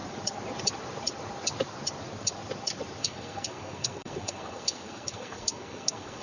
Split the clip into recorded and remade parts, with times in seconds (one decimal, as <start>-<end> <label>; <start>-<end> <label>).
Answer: 0.0-3.0 recorded; 3.0-6.2 remade